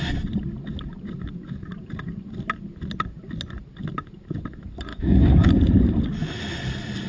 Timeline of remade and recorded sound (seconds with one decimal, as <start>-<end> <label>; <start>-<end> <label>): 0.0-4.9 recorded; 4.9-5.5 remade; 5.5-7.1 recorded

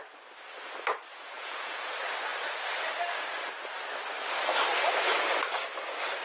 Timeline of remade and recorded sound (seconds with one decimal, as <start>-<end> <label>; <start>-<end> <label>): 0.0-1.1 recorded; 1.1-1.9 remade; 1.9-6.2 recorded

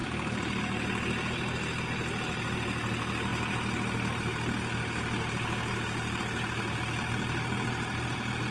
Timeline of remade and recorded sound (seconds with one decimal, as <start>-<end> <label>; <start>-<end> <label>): 0.0-0.6 remade; 0.6-8.5 recorded

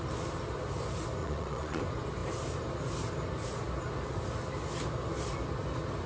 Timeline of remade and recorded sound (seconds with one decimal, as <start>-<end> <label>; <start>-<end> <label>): 0.0-1.2 recorded; 1.2-1.8 remade; 1.8-6.1 recorded

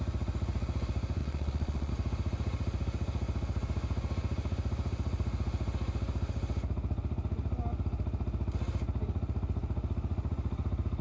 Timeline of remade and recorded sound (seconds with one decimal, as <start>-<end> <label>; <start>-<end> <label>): 0.0-1.2 recorded; 1.2-1.9 remade; 1.9-11.0 recorded

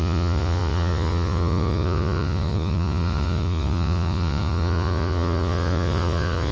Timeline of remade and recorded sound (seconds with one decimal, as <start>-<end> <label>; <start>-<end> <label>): 0.0-6.5 remade

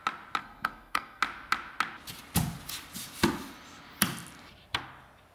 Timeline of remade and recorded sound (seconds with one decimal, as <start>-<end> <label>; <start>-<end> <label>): 0.0-0.4 recorded; 0.4-1.2 remade; 1.2-5.3 recorded

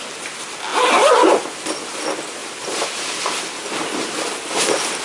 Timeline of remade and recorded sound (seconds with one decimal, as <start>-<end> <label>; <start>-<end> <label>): 0.0-2.4 recorded; 2.4-3.2 remade; 3.2-5.0 recorded